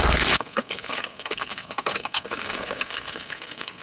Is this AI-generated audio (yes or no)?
yes